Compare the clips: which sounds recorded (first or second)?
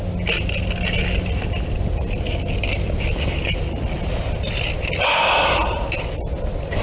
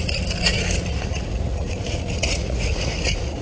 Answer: first